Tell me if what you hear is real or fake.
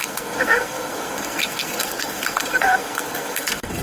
fake